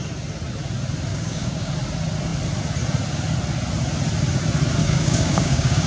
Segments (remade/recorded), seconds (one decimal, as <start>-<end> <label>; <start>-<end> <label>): 0.0-1.1 recorded; 1.1-1.7 remade; 1.7-4.8 recorded; 4.8-5.9 remade